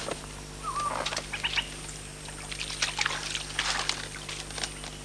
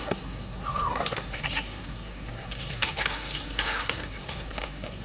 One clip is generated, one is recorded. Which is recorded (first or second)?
first